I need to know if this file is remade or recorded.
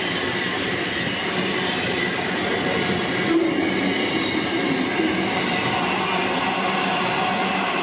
recorded